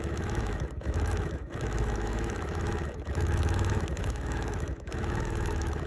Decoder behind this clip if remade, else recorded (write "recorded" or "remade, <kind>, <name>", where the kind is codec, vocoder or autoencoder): remade, autoencoder, DAC-VAE